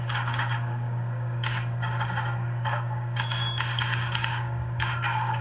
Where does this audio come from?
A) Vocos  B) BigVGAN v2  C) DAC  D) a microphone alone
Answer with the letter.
C